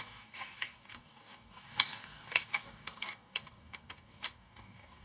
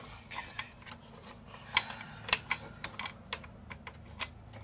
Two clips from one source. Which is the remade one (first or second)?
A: first